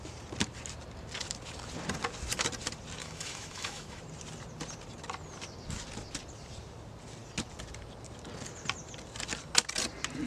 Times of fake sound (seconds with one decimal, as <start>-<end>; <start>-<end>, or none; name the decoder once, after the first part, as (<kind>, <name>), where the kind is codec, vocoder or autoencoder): 3.0-4.0 (autoencoder, DAC-VAE)